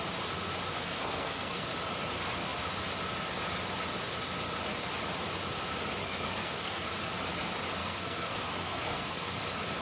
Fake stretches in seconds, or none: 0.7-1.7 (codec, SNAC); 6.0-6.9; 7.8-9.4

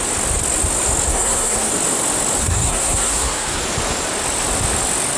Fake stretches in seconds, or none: 1.1-1.7 (codec, SNAC); 2.4-3.6

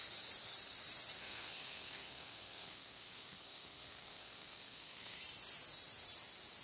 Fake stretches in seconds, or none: 1.2-5.2 (codec, SNAC)